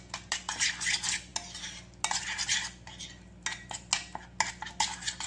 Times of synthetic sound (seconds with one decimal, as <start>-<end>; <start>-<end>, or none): none